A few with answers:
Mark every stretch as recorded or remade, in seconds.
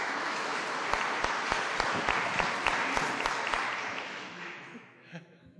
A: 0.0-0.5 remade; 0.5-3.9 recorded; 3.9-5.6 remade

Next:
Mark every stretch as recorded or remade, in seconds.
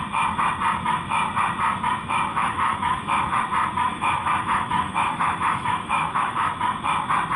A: 0.0-2.3 recorded; 2.3-3.4 remade; 3.4-3.9 recorded; 3.9-6.5 remade; 6.5-7.4 recorded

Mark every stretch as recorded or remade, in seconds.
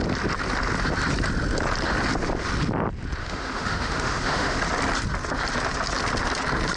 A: 0.0-3.2 recorded; 3.2-4.6 remade; 4.6-6.8 recorded